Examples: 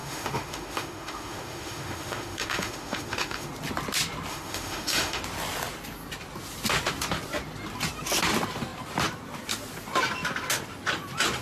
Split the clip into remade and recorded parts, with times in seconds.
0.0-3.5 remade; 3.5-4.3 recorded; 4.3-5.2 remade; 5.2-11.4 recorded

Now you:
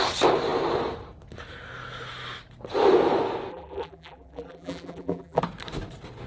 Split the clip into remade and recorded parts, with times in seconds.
0.0-3.5 recorded; 3.5-5.4 remade; 5.4-6.3 recorded

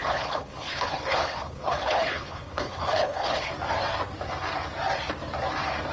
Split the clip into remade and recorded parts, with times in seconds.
0.0-3.5 remade; 3.5-5.9 recorded

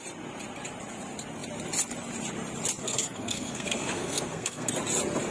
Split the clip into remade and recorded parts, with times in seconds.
0.0-2.8 recorded; 2.8-4.7 remade; 4.7-5.3 recorded

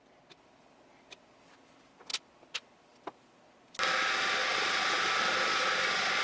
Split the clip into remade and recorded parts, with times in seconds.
0.0-4.5 recorded; 4.5-5.4 remade; 5.4-6.2 recorded